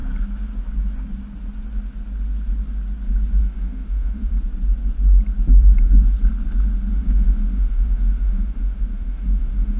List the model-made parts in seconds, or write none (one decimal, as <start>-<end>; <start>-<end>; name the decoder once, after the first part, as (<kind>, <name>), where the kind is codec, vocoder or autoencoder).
3.4-4.3 (autoencoder, DAC-VAE); 6.9-9.8